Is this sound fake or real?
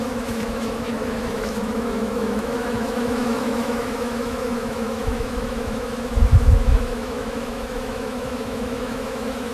fake